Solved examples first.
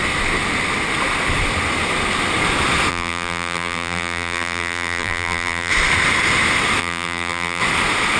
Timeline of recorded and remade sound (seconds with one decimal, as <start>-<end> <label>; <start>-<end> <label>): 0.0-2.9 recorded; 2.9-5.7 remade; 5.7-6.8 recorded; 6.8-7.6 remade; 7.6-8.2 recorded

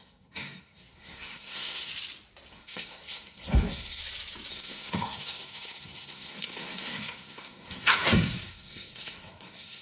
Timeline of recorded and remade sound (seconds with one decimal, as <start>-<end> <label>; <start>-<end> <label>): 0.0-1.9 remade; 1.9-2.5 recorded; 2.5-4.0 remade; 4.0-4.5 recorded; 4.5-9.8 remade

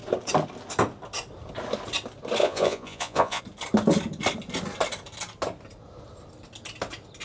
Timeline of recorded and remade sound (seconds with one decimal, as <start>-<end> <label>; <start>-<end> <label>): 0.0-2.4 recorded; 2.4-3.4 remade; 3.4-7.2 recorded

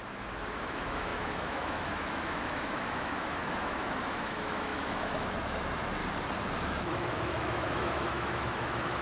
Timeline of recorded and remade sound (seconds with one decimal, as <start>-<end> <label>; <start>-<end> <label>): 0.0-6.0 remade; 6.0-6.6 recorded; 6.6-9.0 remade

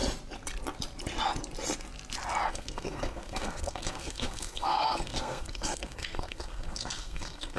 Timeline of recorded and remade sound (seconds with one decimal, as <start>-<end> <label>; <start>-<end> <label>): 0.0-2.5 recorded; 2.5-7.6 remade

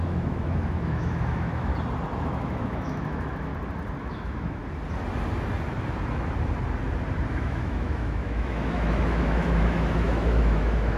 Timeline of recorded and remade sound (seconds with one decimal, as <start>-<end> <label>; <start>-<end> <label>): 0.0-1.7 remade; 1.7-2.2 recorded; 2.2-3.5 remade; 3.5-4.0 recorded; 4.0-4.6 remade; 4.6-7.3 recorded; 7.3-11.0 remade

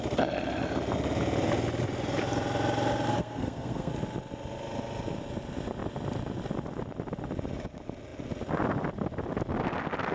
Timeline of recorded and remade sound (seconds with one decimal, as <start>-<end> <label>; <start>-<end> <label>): 0.0-3.1 recorded; 3.1-3.9 remade; 3.9-10.1 recorded